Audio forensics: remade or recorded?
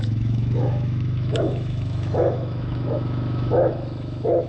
remade